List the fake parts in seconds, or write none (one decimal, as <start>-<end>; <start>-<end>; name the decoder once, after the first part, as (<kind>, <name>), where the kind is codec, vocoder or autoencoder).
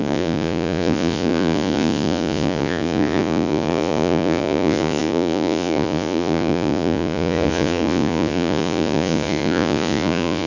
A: 0.0-10.5 (vocoder, Vocos)